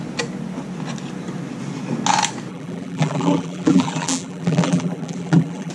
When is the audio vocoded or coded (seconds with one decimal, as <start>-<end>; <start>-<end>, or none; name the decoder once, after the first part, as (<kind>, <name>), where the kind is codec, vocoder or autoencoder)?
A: 2.5-5.7 (vocoder, BigVGAN v2)